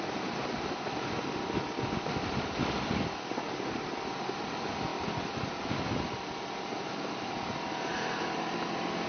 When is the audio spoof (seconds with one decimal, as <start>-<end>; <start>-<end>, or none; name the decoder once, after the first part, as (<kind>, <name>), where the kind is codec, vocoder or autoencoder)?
none